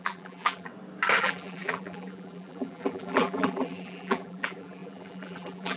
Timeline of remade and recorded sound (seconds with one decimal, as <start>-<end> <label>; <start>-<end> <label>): 0.0-0.7 remade; 0.7-1.2 recorded; 1.2-5.8 remade